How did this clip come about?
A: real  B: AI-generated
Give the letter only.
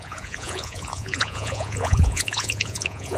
B